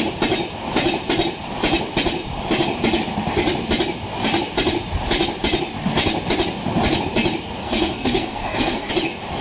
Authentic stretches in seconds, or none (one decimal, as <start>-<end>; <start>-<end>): 0.0-7.6; 8.9-9.4